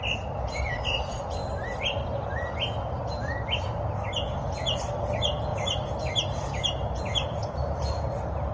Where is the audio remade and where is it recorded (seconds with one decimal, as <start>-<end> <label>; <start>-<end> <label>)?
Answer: 0.0-8.5 recorded